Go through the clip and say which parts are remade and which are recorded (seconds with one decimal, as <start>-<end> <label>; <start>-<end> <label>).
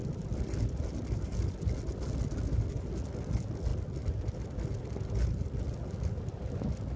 0.0-1.6 remade; 1.6-7.0 recorded